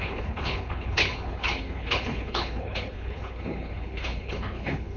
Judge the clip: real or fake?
fake